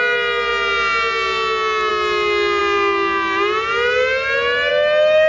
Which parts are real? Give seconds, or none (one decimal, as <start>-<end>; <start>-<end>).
0.0-5.3